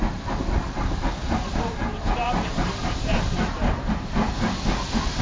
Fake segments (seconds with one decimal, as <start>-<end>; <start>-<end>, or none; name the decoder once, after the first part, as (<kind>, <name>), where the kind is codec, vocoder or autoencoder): 1.2-4.3 (vocoder, BigVGAN v2)